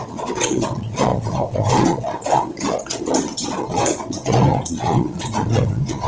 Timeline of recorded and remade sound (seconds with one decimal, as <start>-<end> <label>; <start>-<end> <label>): 0.0-6.1 remade